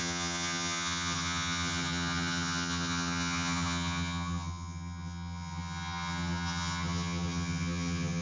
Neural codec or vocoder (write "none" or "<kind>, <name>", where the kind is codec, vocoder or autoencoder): vocoder, HiFi-GAN